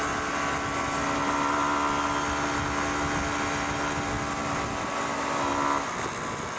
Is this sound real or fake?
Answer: real